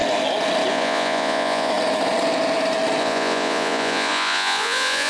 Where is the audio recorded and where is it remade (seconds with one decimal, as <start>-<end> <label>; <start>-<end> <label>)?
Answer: 0.0-0.7 recorded; 0.7-1.7 remade; 1.7-3.0 recorded; 3.0-5.1 remade